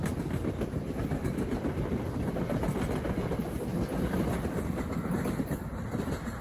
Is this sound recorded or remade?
recorded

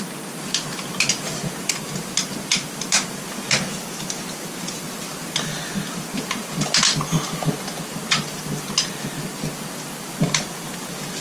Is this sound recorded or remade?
recorded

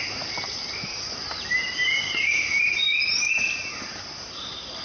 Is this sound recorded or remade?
remade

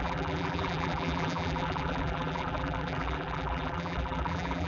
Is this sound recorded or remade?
remade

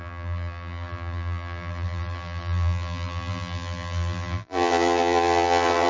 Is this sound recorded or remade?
remade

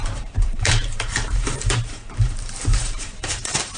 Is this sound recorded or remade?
remade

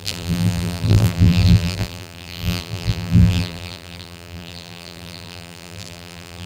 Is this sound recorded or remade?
remade